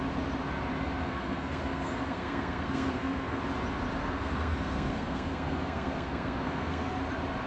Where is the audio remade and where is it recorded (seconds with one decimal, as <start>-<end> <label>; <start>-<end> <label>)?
0.0-1.0 recorded; 1.0-3.4 remade; 3.4-4.0 recorded; 4.0-6.9 remade; 6.9-7.5 recorded